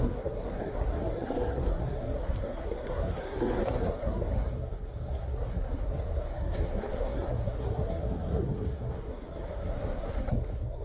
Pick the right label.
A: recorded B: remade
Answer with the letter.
B